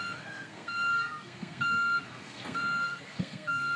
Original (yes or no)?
no